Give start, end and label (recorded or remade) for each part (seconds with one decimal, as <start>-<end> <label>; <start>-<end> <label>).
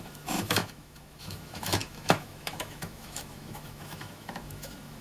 0.0-5.0 remade